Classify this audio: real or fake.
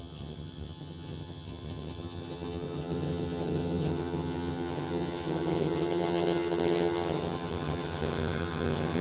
fake